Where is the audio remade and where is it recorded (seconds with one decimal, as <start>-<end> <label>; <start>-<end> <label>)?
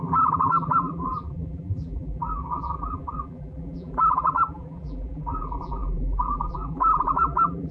0.0-7.7 remade